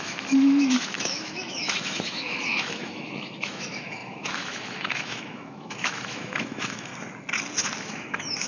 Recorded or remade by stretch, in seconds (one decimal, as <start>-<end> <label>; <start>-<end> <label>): 0.0-6.9 remade; 6.9-7.8 recorded; 7.8-8.5 remade